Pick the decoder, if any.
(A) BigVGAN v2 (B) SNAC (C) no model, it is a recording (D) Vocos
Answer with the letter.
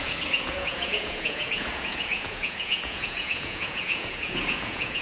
D